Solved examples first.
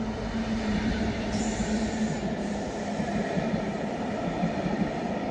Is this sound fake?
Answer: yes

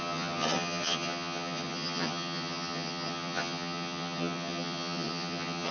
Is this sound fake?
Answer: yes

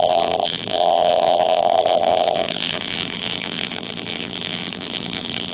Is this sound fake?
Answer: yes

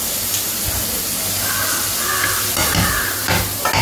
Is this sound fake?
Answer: no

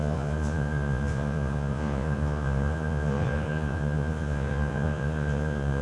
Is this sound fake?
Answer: yes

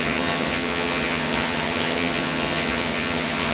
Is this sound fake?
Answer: yes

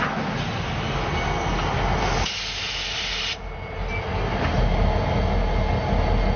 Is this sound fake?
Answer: no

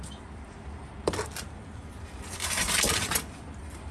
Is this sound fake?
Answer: yes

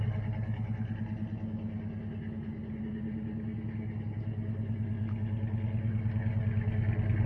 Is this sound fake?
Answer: no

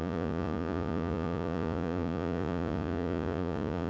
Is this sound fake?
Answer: yes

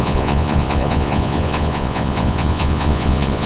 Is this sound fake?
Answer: yes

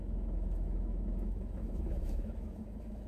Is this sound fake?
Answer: yes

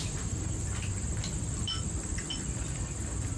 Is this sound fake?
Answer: no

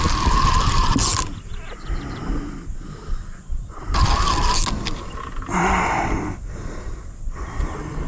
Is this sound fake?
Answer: no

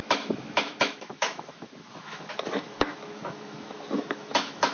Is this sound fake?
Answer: yes